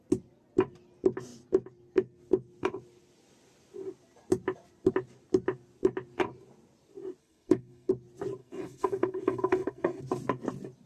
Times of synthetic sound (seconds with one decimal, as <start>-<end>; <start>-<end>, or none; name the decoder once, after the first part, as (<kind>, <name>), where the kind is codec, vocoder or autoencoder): 7.2-7.9 (codec, SNAC); 8.4-10.0